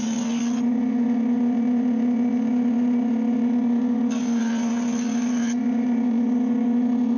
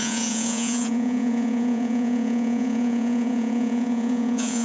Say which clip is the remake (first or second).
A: second